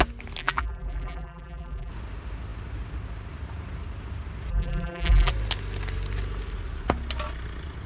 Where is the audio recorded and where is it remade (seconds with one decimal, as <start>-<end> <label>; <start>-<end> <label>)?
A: 0.0-0.4 recorded; 0.4-1.9 remade; 1.9-4.5 recorded; 4.5-5.3 remade; 5.3-7.9 recorded

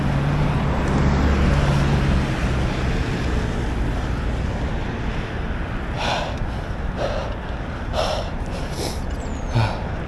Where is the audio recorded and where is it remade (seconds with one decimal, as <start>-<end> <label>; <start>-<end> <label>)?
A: 0.0-7.2 recorded; 7.2-9.3 remade; 9.3-10.1 recorded

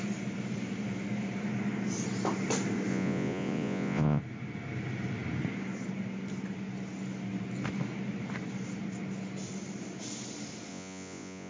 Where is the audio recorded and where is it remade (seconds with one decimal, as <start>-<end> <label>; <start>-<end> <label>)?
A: 0.0-2.9 recorded; 2.9-4.2 remade; 4.2-10.7 recorded; 10.7-11.5 remade